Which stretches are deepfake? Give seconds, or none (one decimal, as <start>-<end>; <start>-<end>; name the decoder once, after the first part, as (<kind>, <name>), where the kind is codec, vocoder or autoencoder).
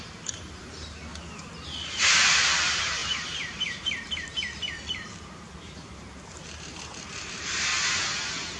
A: 0.0-1.1 (vocoder, BigVGAN v2); 1.9-7.7